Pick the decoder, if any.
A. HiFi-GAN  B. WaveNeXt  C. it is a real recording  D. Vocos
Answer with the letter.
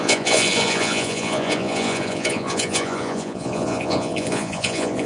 D